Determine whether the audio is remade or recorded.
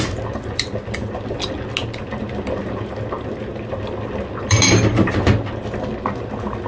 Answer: recorded